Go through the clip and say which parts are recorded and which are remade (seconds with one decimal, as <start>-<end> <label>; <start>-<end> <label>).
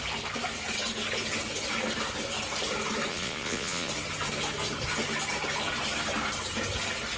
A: 0.0-3.1 recorded; 3.1-3.9 remade; 3.9-7.2 recorded